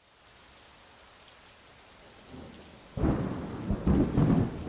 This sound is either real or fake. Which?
real